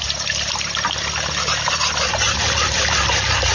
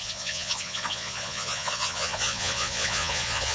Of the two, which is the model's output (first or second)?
second